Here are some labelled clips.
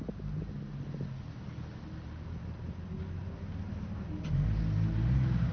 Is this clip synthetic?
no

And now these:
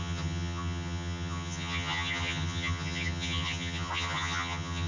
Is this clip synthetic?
yes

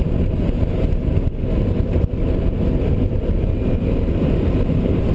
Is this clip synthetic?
no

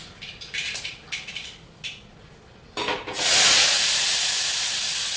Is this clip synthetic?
no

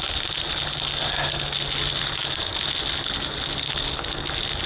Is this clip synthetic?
no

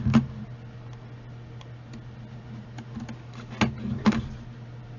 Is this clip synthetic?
no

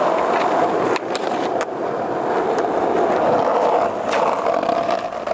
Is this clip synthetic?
no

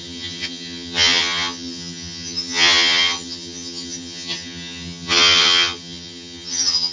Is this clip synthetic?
yes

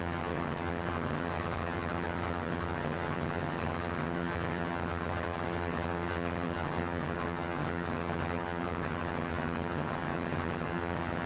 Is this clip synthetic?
yes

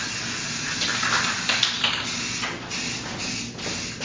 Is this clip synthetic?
no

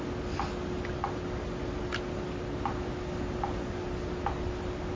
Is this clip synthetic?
no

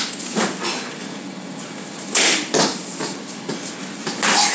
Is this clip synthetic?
no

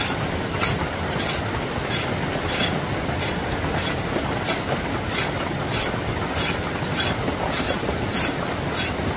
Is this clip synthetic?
no